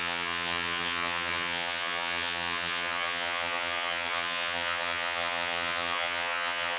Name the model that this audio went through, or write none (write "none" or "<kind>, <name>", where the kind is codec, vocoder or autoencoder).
vocoder, HiFi-GAN